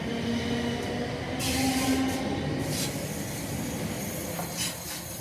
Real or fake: real